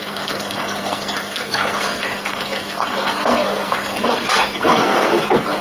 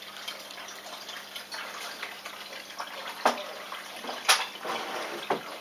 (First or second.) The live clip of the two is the second